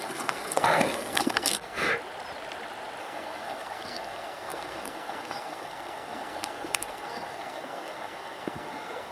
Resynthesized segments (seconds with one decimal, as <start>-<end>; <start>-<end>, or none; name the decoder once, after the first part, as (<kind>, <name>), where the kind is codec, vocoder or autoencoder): 0.0-1.9 (codec, SNAC); 3.0-9.1